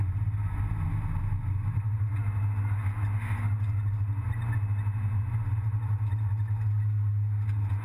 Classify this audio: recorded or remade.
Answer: recorded